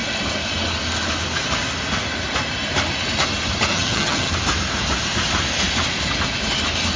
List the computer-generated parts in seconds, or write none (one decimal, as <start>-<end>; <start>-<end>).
3.7-4.3